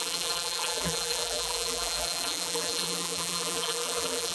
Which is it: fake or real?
fake